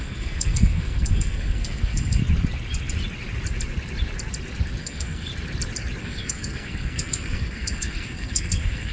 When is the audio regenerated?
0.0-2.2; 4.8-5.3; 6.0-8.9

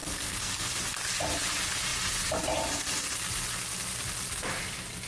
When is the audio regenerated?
0.0-0.7

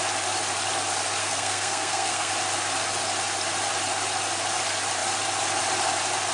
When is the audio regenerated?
1.2-2.3

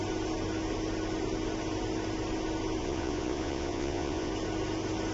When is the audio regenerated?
2.8-4.3

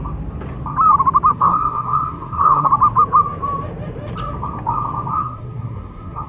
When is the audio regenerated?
1.3-2.7; 5.1-6.3

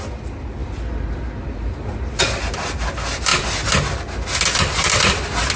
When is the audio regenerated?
none